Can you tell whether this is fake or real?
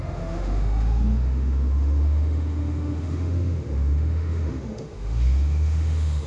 fake